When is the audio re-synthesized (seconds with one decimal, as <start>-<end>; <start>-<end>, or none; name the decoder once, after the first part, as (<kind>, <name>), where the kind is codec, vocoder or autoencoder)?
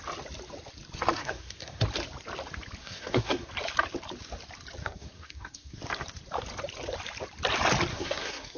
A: 1.2-1.8 (codec, SNAC); 2.8-3.5; 4.8-5.8; 7.9-8.6